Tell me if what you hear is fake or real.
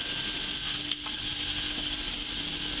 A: real